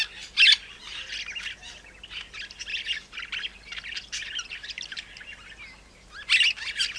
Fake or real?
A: real